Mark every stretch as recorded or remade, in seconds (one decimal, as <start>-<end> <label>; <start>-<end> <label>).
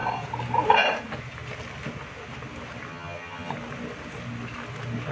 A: 0.0-2.9 recorded; 2.9-3.5 remade; 3.5-5.1 recorded